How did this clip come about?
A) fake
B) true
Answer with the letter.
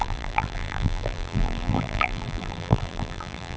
A